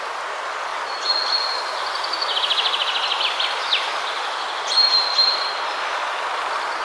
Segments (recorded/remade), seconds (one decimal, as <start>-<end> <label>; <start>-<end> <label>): 0.0-6.8 recorded